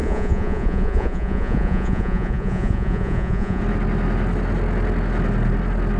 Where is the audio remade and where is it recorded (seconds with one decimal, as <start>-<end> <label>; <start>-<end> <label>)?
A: 0.0-3.6 remade; 3.6-6.0 recorded

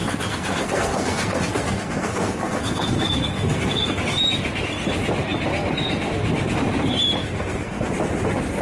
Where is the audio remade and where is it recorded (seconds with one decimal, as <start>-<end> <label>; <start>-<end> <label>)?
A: 0.0-4.0 remade; 4.0-7.2 recorded; 7.2-7.9 remade; 7.9-8.6 recorded

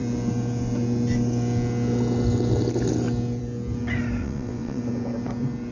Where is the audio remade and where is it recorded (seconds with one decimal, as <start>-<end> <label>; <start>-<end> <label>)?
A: 0.0-4.2 recorded; 4.2-4.8 remade; 4.8-5.7 recorded

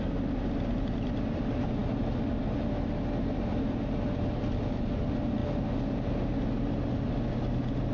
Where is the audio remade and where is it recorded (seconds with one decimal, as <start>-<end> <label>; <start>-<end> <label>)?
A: 0.0-7.9 recorded

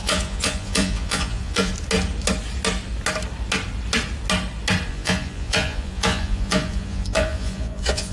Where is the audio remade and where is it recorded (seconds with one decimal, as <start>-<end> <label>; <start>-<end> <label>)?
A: 0.0-1.7 remade; 1.7-4.9 recorded; 4.9-8.1 remade

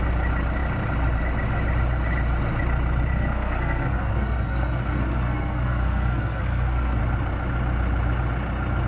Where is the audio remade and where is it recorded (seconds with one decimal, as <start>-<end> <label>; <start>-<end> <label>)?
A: 0.0-3.1 recorded; 3.1-7.0 remade; 7.0-8.9 recorded

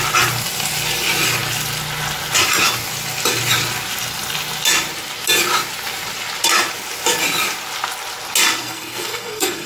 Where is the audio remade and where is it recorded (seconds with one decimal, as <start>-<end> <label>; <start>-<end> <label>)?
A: 0.0-8.6 recorded; 8.6-9.7 remade

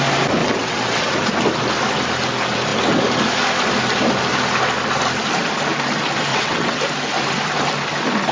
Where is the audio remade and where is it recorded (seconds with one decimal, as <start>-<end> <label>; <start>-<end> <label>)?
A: 0.0-0.4 recorded; 0.4-1.1 remade; 1.1-6.3 recorded; 6.3-6.8 remade; 6.8-8.3 recorded